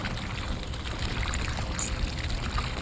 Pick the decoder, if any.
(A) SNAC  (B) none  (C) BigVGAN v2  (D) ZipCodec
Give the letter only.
C